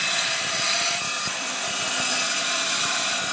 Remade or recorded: recorded